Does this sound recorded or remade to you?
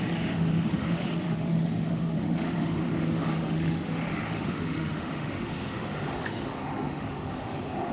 remade